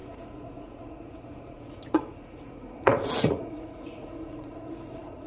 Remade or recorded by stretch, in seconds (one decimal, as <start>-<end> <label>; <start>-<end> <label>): 0.0-5.3 remade